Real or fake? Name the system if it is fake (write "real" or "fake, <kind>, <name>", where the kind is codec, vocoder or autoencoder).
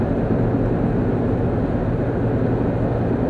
real